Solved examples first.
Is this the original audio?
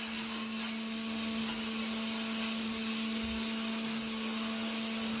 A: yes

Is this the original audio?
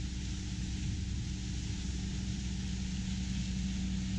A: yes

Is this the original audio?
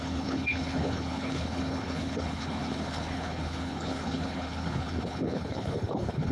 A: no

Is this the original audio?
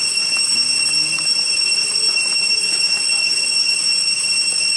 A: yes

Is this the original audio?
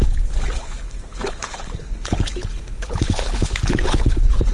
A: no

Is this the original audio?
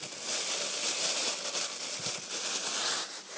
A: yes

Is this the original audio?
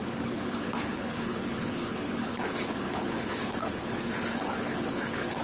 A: no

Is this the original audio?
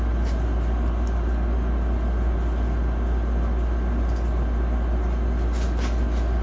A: yes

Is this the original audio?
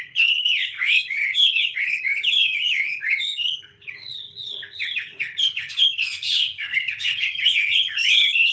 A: no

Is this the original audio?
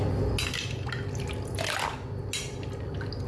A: yes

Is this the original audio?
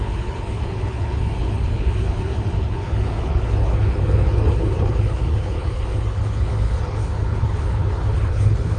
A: no